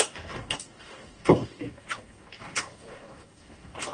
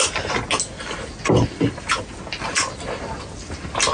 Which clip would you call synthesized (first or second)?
first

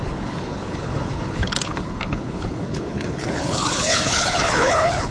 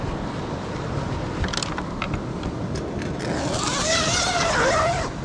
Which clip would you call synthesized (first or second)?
first